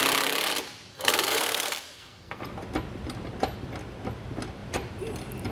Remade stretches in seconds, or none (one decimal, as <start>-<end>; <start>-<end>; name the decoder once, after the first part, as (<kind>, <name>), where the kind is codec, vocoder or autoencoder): 0.9-2.4 (codec, SNAC)